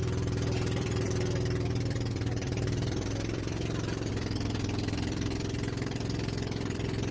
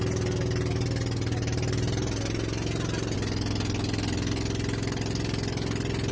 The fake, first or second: first